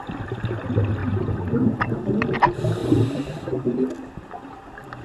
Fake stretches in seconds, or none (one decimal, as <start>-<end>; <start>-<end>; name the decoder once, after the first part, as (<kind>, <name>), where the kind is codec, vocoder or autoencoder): 1.0-1.8 (vocoder, BigVGAN v2); 2.8-3.8